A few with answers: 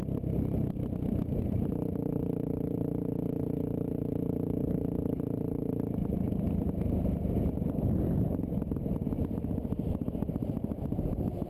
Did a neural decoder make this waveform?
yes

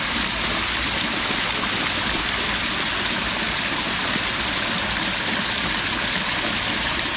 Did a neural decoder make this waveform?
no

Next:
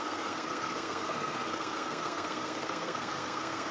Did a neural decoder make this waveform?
yes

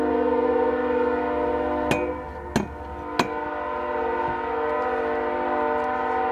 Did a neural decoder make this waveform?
no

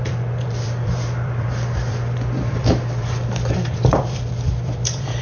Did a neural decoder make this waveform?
yes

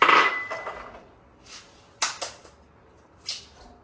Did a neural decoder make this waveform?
no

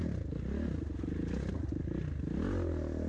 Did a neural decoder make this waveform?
no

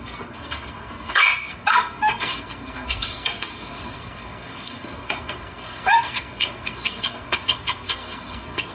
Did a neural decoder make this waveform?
yes